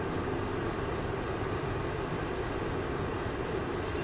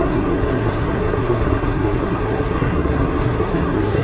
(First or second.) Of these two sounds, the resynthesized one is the second